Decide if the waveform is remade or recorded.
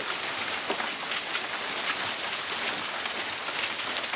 recorded